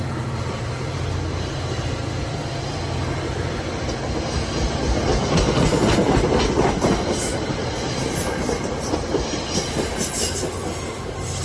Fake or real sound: real